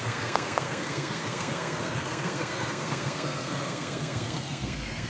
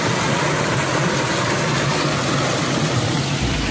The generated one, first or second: first